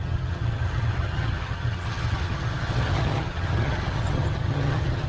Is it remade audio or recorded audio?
remade